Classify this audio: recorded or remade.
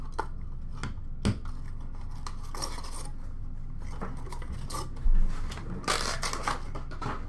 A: recorded